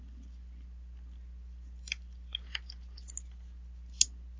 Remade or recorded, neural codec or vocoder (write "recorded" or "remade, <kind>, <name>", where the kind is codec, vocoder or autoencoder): recorded